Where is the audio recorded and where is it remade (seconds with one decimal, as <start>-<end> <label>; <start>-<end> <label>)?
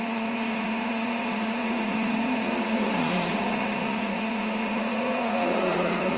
0.0-6.2 remade